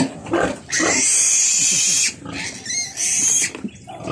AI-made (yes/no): no